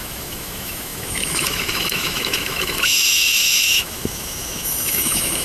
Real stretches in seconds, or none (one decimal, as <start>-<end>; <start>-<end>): none